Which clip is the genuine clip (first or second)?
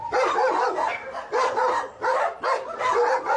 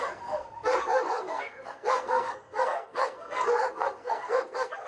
first